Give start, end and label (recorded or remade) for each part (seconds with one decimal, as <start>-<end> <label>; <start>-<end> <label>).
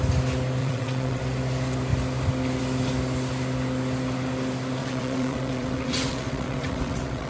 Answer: 0.0-0.6 recorded; 0.6-1.2 remade; 1.2-4.8 recorded; 4.8-7.3 remade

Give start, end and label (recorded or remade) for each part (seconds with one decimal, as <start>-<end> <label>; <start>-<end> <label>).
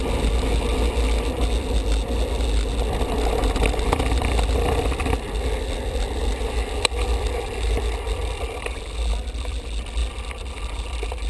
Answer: 0.0-11.3 recorded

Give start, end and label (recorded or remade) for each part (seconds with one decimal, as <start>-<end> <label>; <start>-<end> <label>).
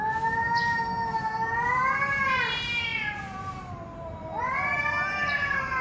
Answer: 0.0-5.8 remade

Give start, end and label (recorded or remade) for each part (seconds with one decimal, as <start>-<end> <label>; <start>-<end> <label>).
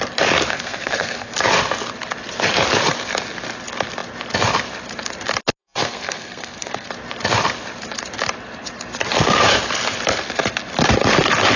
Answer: 0.0-0.5 recorded; 0.5-1.3 remade; 1.3-5.6 recorded; 5.6-6.9 remade; 6.9-11.6 recorded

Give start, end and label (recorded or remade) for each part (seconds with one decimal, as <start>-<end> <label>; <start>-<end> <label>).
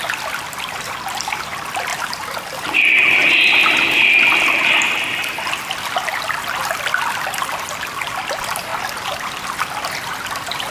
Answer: 0.0-1.9 remade; 1.9-2.5 recorded; 2.5-3.2 remade; 3.2-6.2 recorded; 6.2-10.7 remade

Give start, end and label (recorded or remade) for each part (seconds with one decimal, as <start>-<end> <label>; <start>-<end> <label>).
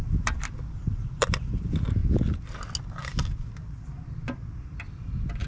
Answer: 0.0-2.0 remade; 2.0-5.5 recorded